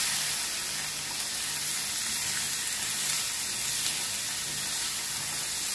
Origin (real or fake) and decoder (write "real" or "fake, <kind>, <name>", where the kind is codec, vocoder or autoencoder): real